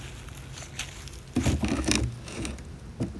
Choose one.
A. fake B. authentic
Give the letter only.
B